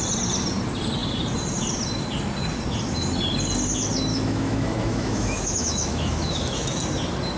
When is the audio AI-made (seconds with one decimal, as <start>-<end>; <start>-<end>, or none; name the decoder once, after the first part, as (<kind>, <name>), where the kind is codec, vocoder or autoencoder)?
4.1-6.8 (autoencoder, DAC-VAE)